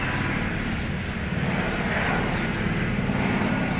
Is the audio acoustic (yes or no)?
yes